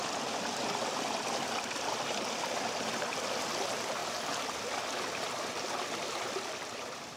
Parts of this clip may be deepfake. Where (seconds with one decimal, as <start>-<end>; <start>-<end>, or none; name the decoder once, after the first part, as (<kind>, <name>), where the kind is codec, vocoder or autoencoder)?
0.0-4.0 (vocoder, BigVGAN v2); 5.5-7.2